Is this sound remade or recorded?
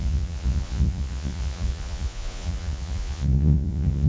remade